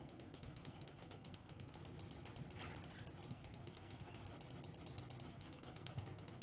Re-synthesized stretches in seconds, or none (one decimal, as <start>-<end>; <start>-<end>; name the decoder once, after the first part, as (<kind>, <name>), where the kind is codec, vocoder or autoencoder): 0.0-1.8 (codec, SNAC); 3.3-4.2; 5.3-6.4